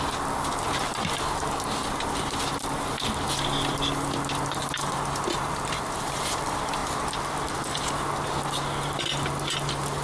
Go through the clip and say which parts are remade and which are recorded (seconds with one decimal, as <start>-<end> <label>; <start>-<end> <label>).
0.0-10.0 recorded